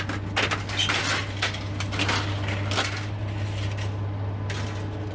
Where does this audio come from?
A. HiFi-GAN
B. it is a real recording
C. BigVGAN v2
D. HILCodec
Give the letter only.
B